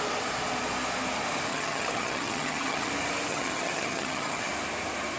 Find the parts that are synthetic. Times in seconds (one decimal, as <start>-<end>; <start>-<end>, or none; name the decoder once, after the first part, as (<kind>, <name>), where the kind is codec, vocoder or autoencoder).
1.5-2.9 (vocoder, HiFi-GAN); 3.3-4.5